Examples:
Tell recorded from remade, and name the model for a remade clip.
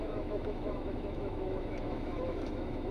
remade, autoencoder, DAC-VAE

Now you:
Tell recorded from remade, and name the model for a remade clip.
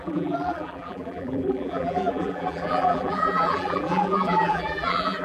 remade, vocoder, BigVGAN v2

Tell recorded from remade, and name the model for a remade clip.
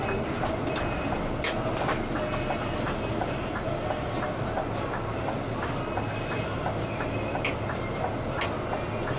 recorded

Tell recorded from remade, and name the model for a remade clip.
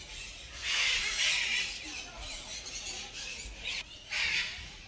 remade, vocoder, Vocos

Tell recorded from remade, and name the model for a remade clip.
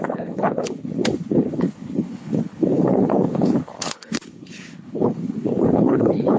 remade, codec, HILCodec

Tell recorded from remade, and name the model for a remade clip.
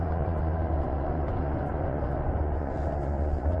remade, vocoder, Vocos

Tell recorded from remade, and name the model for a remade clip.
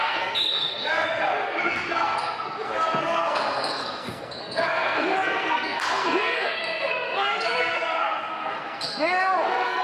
remade, codec, SNAC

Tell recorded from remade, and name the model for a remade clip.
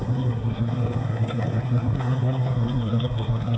remade, codec, SNAC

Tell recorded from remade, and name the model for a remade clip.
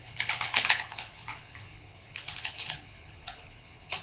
remade, codec, HILCodec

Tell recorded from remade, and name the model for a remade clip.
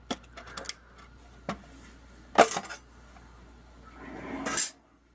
recorded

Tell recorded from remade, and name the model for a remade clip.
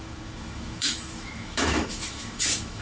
remade, autoencoder, DAC-VAE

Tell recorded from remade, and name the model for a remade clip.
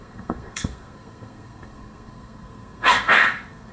remade, codec, SNAC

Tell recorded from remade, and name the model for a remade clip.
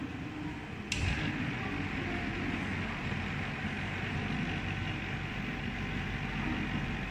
recorded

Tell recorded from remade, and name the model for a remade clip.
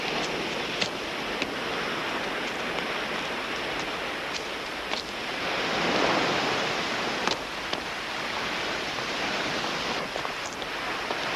recorded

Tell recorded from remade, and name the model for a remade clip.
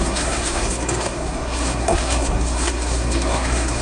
remade, codec, SNAC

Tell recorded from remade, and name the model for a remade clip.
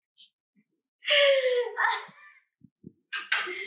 recorded